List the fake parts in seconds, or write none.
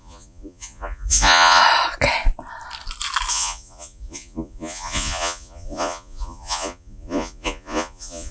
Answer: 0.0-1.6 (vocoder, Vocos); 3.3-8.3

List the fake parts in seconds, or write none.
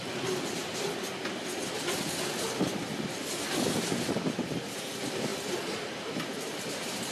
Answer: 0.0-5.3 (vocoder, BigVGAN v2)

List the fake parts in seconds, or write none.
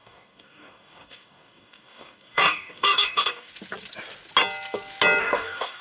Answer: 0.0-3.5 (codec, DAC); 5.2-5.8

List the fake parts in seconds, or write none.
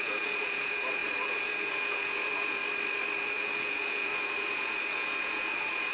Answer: 0.0-2.6 (vocoder, Vocos); 3.2-5.9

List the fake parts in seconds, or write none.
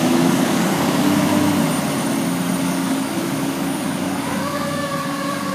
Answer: 0.0-1.3 (codec, DAC); 2.6-5.5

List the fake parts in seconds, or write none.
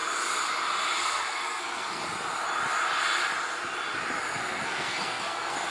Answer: 1.0-2.0 (codec, SNAC); 4.2-5.7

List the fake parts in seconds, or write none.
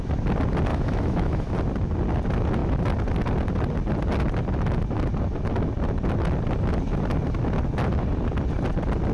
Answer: 0.7-1.5 (autoencoder, DAC-VAE)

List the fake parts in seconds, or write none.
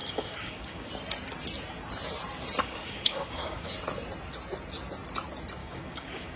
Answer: 0.0-0.9 (codec, DAC); 2.6-3.7; 5.6-6.4